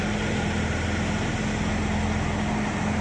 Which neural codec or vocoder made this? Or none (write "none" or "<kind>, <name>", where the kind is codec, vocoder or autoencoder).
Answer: none